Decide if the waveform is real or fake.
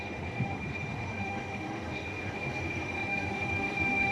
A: fake